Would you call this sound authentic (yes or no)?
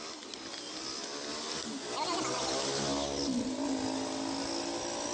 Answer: yes